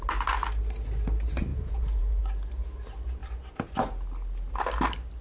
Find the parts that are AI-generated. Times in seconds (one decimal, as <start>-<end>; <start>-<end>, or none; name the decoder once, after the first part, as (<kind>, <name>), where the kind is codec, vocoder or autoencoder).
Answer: 1.5-2.2 (vocoder, Vocos)